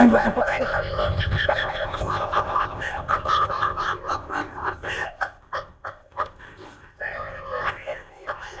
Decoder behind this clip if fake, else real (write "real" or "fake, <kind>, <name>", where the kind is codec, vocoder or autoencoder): fake, codec, ZipCodec